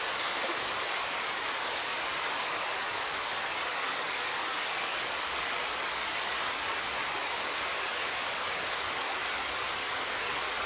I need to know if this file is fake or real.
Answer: fake